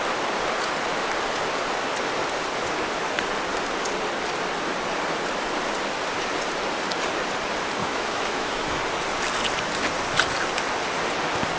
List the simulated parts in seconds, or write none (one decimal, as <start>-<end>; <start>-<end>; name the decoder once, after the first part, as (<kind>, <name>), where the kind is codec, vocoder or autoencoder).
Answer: 7.8-8.8 (autoencoder, DAC-VAE)